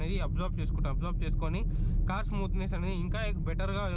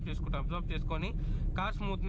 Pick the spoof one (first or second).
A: second